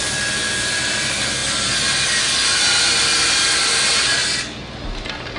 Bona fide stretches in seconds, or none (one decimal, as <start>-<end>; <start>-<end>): 4.2-5.4